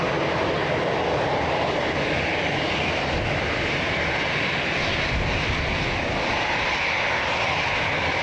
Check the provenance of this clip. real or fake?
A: real